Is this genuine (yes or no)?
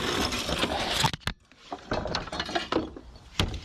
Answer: yes